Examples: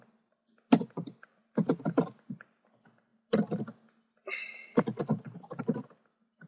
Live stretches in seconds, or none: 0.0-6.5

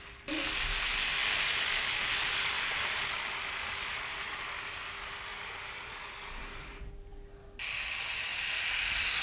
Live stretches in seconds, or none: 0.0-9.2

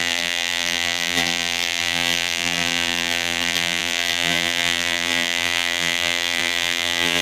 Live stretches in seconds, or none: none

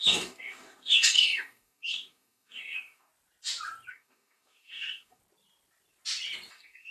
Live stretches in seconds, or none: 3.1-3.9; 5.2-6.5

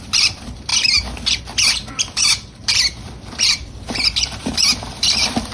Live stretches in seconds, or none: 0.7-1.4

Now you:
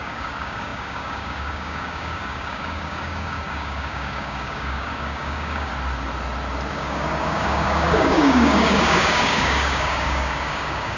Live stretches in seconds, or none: 5.7-6.7

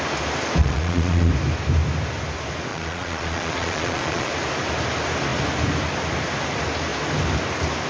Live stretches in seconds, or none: 0.0-0.6; 1.3-2.7; 4.3-7.9

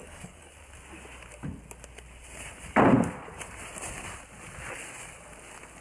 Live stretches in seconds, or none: 0.5-5.8